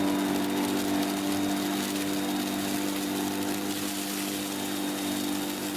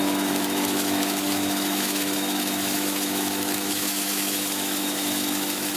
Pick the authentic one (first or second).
first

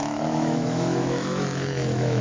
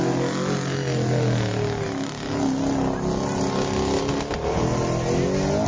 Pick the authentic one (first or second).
second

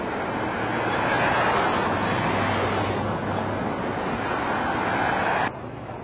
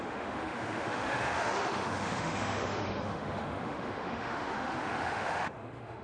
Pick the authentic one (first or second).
first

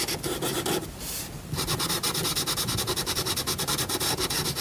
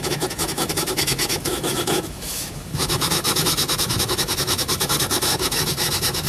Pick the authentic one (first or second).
first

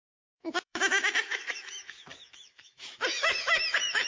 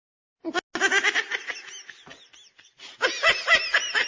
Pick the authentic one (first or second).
second